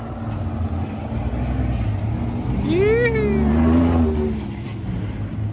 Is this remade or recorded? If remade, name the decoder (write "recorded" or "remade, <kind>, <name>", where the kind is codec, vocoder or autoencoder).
recorded